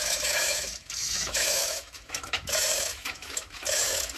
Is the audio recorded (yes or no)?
no